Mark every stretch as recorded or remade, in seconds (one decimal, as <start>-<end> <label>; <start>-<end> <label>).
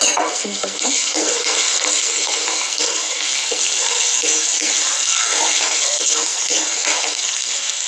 0.0-7.9 remade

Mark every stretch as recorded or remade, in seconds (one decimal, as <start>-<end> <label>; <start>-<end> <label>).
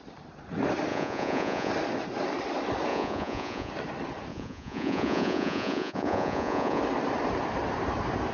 0.0-0.9 recorded; 0.9-1.7 remade; 1.7-2.9 recorded; 2.9-3.7 remade; 3.7-4.3 recorded; 4.3-6.8 remade; 6.8-8.3 recorded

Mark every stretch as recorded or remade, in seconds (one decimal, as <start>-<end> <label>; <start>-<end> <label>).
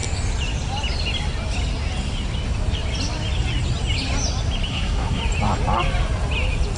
0.0-4.7 recorded; 4.7-5.2 remade; 5.2-6.8 recorded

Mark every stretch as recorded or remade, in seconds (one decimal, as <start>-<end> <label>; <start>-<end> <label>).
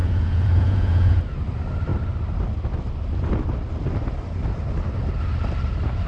0.0-1.2 remade; 1.2-6.1 recorded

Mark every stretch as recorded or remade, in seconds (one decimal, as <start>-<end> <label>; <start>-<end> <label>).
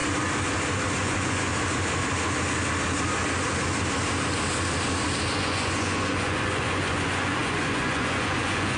0.0-1.0 recorded; 1.0-1.5 remade; 1.5-5.3 recorded; 5.3-8.8 remade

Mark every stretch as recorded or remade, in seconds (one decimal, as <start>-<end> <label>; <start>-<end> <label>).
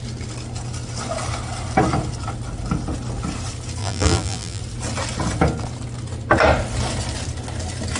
0.0-3.8 recorded; 3.8-4.6 remade; 4.6-8.0 recorded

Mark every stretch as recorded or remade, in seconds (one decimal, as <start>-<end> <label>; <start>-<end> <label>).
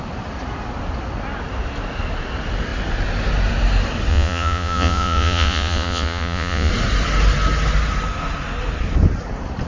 0.0-4.1 recorded; 4.1-6.7 remade; 6.7-9.7 recorded